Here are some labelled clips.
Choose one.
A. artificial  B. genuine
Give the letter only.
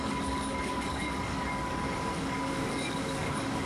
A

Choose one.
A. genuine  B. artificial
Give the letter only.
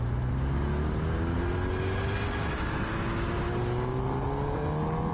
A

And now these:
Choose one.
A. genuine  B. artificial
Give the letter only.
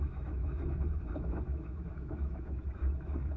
B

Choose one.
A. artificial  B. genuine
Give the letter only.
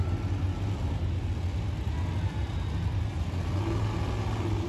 B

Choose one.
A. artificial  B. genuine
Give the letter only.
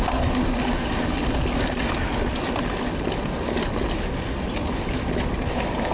B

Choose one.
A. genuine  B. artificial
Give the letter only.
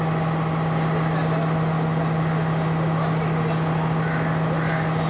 A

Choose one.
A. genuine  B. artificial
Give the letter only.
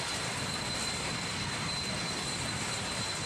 A